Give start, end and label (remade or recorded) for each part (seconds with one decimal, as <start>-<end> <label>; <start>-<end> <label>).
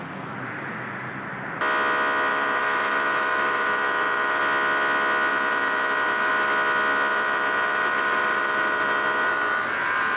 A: 0.0-2.3 recorded; 2.3-4.4 remade; 4.4-5.3 recorded; 5.3-6.3 remade; 6.3-7.1 recorded; 7.1-10.2 remade